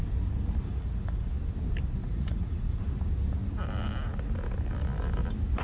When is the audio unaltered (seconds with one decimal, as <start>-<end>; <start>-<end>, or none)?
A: 0.0-0.7; 1.3-2.0; 2.8-5.6